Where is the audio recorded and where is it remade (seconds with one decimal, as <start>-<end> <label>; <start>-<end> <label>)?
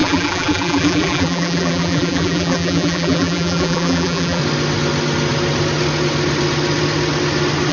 0.0-4.4 remade; 4.4-7.7 recorded